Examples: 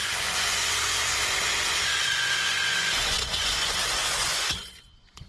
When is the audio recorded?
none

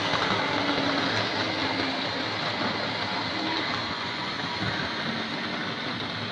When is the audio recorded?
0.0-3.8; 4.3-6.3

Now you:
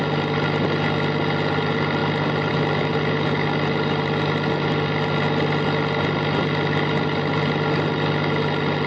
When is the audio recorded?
0.0-8.9

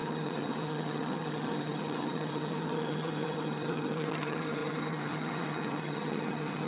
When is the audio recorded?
none

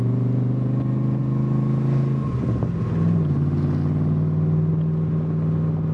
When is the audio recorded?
0.0-5.9